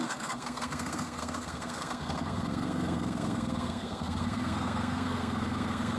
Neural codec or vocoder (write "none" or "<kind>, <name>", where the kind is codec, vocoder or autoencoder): codec, SNAC